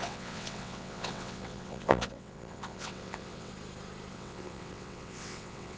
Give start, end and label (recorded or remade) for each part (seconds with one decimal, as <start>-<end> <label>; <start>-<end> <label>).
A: 0.0-3.5 remade; 3.5-4.1 recorded; 4.1-5.8 remade

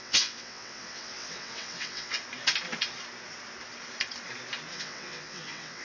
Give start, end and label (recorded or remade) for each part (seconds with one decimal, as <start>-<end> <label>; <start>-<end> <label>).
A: 0.0-2.2 remade; 2.2-4.7 recorded; 4.7-5.8 remade

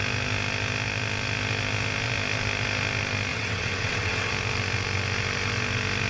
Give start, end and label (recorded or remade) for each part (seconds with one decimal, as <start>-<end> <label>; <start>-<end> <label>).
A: 0.0-3.3 recorded; 3.3-4.3 remade; 4.3-6.1 recorded

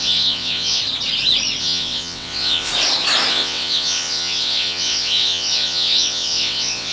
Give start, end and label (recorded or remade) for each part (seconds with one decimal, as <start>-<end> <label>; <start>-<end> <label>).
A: 0.0-0.8 remade; 0.8-1.6 recorded; 1.6-2.7 remade; 2.7-3.3 recorded; 3.3-6.9 remade

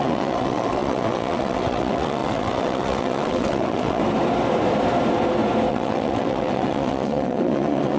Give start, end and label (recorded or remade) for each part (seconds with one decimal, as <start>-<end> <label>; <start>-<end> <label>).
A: 0.0-4.0 remade; 4.0-5.7 recorded; 5.7-8.0 remade

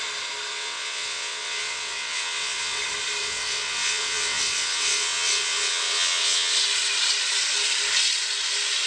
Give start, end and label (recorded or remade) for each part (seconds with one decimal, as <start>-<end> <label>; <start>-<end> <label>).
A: 0.0-0.5 recorded; 0.5-2.8 remade; 2.8-3.2 recorded; 3.2-6.5 remade; 6.5-8.9 recorded